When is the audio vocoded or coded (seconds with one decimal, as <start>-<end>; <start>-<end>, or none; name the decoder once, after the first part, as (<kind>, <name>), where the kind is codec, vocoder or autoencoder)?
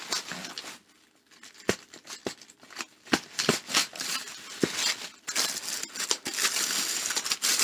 none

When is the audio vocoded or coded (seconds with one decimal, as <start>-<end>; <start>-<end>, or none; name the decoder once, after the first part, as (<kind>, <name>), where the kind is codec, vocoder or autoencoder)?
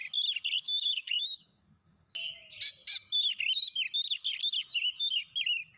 0.6-2.2 (codec, DAC)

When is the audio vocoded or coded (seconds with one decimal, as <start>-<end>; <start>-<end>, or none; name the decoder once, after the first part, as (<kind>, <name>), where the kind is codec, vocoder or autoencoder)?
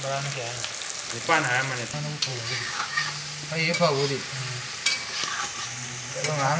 2.3-3.0 (codec, DAC)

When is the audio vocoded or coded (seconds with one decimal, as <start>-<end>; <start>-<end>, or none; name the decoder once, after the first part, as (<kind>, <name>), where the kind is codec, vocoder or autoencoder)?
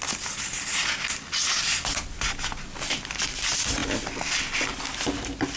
none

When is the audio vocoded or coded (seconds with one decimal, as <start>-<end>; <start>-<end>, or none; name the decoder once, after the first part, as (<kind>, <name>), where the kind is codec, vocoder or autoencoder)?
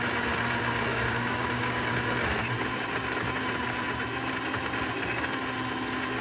0.9-1.9 (codec, DAC)